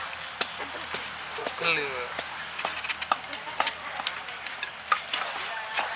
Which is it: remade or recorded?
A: recorded